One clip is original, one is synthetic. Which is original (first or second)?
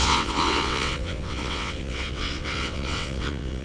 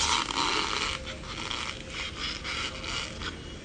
second